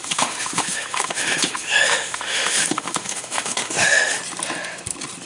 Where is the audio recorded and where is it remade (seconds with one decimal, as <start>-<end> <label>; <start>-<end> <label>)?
0.0-4.2 remade; 4.2-5.3 recorded

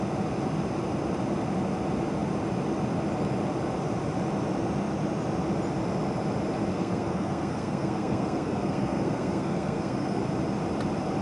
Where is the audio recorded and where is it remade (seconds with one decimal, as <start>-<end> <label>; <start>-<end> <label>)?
0.0-6.7 recorded; 6.7-10.2 remade; 10.2-11.2 recorded

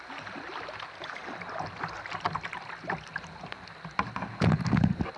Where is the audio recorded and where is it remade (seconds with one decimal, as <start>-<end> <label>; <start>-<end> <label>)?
0.0-5.2 recorded

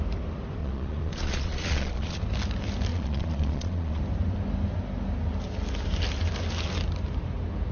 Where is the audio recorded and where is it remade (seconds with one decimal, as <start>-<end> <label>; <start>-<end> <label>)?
0.0-0.6 recorded; 0.6-2.2 remade; 2.2-2.9 recorded; 2.9-4.0 remade; 4.0-7.7 recorded

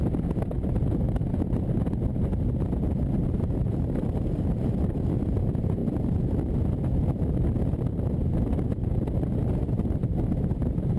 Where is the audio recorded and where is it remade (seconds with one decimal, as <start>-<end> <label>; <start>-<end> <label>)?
0.0-2.1 recorded; 2.1-4.6 remade; 4.6-11.0 recorded

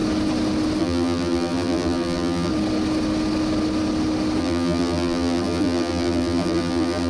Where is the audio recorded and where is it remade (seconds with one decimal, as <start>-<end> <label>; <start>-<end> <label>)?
0.0-0.8 recorded; 0.8-2.5 remade; 2.5-4.4 recorded; 4.4-7.1 remade